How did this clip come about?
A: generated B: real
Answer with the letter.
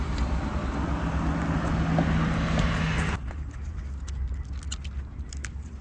B